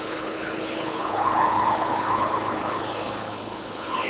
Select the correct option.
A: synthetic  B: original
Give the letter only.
A